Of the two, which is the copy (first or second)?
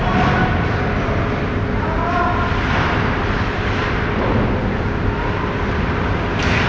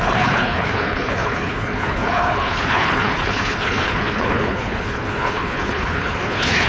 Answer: second